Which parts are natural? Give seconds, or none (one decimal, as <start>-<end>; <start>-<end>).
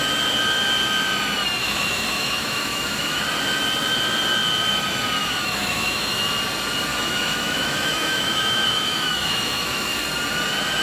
0.0-1.6; 3.2-5.2; 6.4-6.9; 10.0-10.8